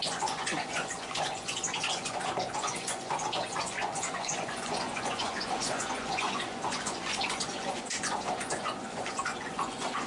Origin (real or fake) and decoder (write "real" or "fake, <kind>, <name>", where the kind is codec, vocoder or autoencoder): fake, vocoder, Vocos